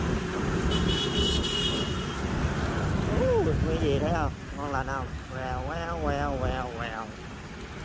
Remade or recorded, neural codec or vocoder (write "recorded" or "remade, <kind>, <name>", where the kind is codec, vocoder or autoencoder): recorded